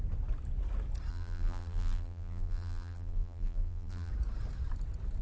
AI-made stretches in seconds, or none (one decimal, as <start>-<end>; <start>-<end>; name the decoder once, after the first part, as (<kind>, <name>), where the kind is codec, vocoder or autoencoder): 1.1-4.1 (vocoder, BigVGAN v2)